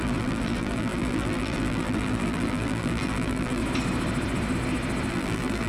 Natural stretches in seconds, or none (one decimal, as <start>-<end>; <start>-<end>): 3.6-5.1